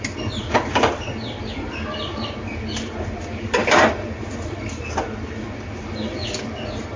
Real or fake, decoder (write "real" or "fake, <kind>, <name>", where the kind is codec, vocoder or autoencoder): fake, vocoder, BigVGAN v2